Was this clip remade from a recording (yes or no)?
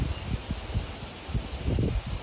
no